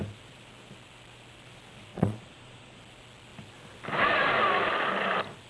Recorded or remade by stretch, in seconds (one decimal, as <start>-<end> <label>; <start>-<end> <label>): 0.0-1.9 recorded; 1.9-2.8 remade; 2.8-5.5 recorded